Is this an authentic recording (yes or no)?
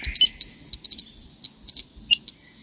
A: yes